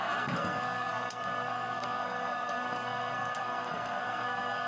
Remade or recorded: remade